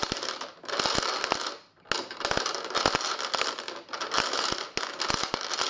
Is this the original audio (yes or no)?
yes